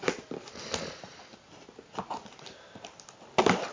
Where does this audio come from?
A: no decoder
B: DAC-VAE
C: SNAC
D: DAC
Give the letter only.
A